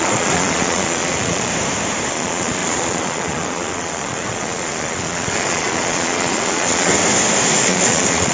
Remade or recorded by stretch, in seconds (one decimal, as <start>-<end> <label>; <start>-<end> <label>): 0.0-1.5 remade; 1.5-2.1 recorded; 2.1-6.9 remade; 6.9-7.6 recorded; 7.6-8.3 remade

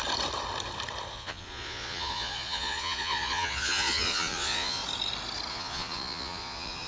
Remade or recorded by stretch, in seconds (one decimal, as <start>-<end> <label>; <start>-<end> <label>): 0.0-1.1 recorded; 1.1-4.8 remade; 4.8-5.5 recorded; 5.5-6.9 remade